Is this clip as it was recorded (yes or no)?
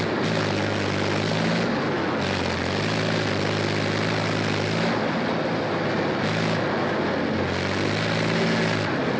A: yes